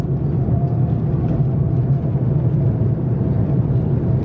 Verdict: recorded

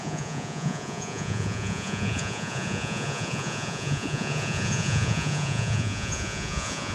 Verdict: remade